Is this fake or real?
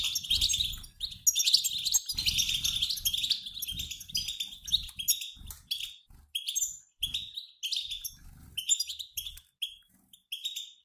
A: real